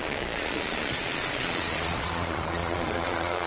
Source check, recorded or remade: remade